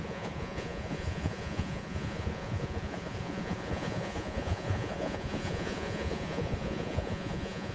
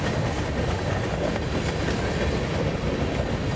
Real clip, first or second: second